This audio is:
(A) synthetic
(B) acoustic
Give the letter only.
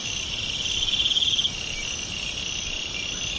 B